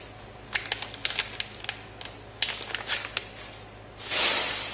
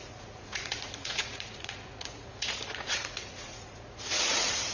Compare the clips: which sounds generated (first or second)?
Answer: second